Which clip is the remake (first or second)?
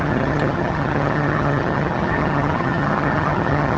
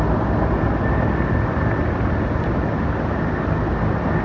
first